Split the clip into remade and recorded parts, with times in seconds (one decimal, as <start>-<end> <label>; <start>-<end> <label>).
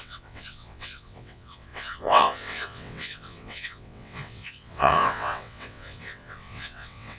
0.0-7.2 remade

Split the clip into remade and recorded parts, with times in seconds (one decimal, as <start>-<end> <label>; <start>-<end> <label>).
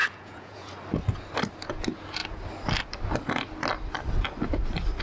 0.0-0.7 remade; 0.7-5.0 recorded